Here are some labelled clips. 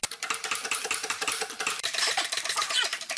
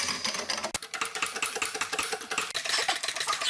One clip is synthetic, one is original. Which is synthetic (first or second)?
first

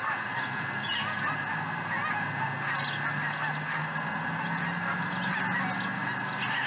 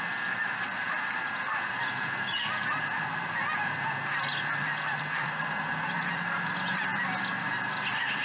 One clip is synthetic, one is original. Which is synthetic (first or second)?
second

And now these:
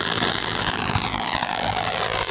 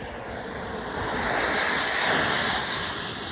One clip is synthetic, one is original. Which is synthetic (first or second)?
first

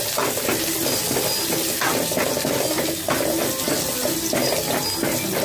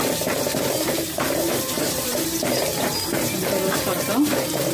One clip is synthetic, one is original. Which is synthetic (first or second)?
second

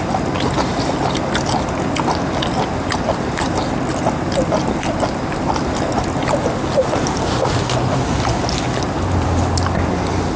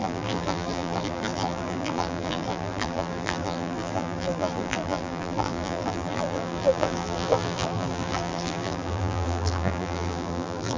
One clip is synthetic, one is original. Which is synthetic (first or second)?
second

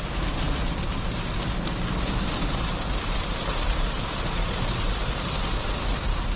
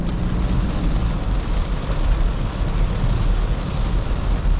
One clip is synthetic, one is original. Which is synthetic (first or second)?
first